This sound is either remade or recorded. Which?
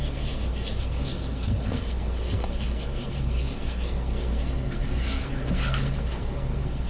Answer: remade